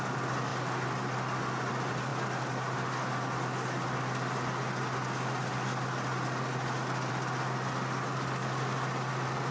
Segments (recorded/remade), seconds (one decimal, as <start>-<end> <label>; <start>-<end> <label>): 0.0-9.5 recorded